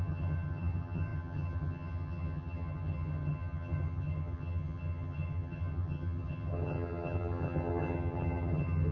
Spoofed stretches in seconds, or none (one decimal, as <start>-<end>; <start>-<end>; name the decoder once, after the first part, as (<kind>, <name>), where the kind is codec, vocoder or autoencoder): 0.0-8.9 (vocoder, HiFi-GAN)